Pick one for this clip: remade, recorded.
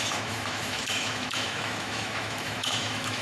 remade